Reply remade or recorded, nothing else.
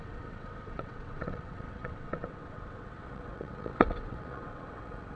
remade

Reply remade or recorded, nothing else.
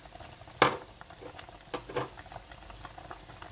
recorded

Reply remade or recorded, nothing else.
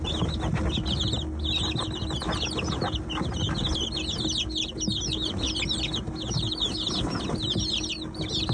recorded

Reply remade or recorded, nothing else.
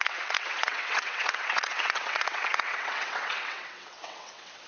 remade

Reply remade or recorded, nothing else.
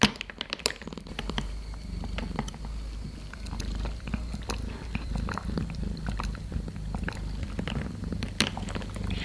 recorded